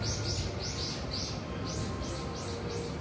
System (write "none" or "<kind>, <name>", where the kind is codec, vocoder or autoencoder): none